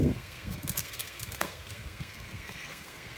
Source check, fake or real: fake